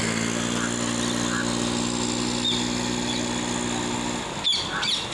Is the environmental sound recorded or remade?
recorded